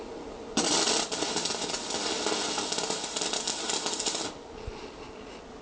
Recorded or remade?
recorded